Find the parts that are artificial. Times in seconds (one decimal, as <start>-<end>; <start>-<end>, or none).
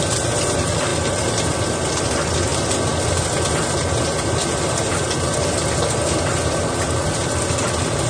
none